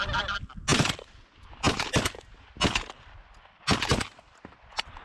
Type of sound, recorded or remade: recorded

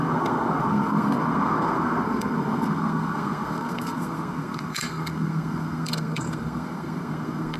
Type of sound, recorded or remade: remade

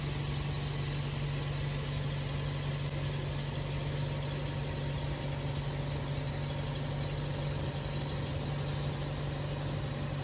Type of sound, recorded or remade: recorded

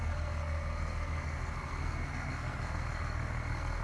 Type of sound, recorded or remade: remade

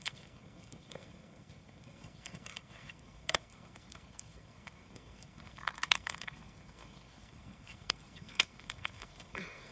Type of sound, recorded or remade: remade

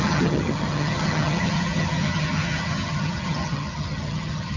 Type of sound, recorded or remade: remade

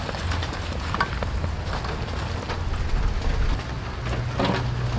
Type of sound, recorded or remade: recorded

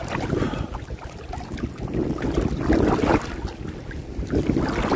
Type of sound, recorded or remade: recorded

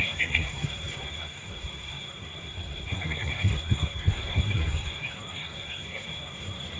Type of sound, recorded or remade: remade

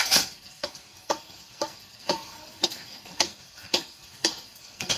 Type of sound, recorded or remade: remade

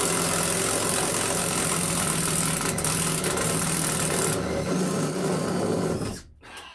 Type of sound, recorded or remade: recorded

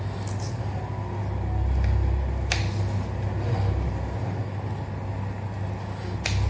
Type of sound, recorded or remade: recorded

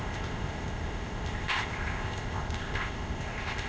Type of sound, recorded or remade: remade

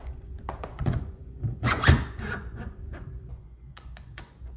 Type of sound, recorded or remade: remade